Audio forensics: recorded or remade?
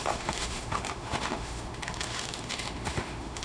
remade